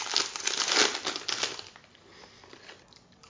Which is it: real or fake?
real